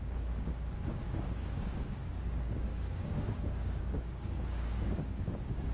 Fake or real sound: fake